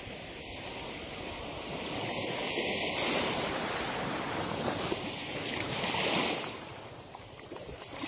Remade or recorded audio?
recorded